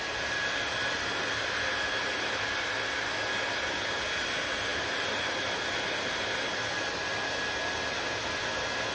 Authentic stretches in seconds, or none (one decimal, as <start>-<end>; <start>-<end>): 0.0-8.9